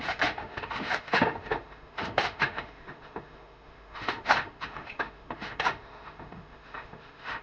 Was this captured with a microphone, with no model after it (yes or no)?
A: no